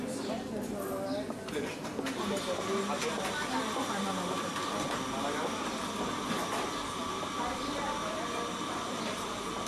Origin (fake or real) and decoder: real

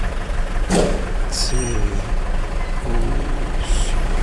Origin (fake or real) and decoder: fake, vocoder, BigVGAN v2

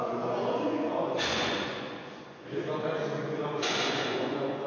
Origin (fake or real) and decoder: fake, vocoder, Vocos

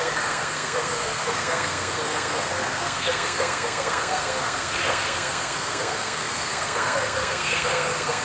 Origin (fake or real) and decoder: fake, codec, SNAC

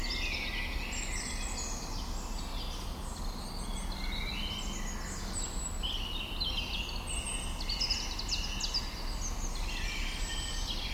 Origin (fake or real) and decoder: real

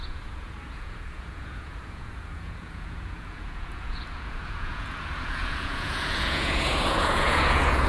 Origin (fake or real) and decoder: fake, vocoder, Vocos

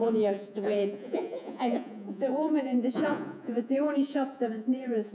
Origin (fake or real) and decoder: fake, vocoder, Vocos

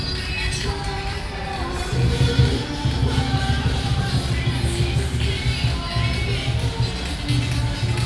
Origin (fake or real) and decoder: real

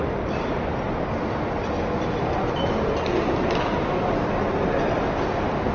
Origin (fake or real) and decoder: real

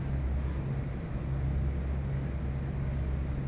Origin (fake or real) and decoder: real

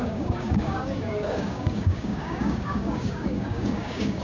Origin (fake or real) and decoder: fake, codec, DAC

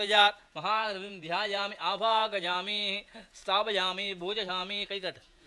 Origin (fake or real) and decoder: fake, vocoder, Vocos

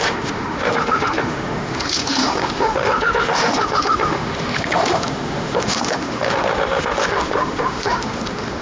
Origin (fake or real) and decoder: fake, autoencoder, DAC-VAE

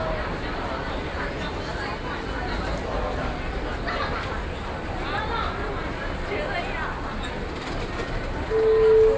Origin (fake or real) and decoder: real